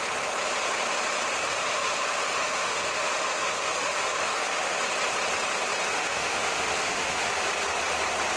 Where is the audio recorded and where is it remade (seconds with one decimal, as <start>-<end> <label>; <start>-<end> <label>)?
0.0-1.4 recorded; 1.4-4.8 remade; 4.8-5.9 recorded; 5.9-7.3 remade; 7.3-8.4 recorded